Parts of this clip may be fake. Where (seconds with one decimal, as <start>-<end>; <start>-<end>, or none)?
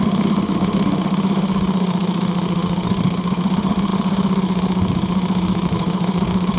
0.0-6.6